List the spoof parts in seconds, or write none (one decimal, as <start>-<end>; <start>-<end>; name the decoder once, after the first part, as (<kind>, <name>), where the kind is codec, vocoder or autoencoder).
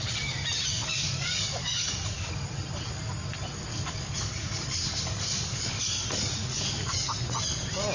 0.7-2.3 (codec, DAC); 3.7-7.2